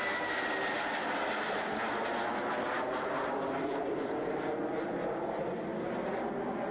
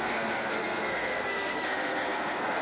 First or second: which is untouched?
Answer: first